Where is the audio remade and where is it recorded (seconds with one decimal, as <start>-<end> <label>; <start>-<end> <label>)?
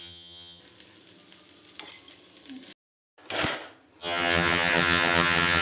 0.0-0.6 remade; 0.6-4.0 recorded; 4.0-5.6 remade